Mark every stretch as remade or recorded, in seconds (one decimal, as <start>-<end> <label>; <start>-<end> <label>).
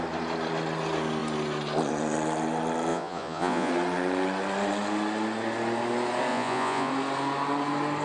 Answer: 0.0-2.9 recorded; 2.9-3.7 remade; 3.7-6.3 recorded; 6.3-6.9 remade; 6.9-8.0 recorded